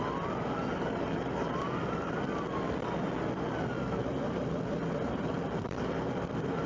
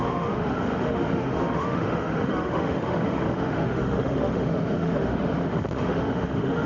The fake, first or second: second